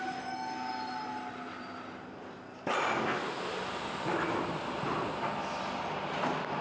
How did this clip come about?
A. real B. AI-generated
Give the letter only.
A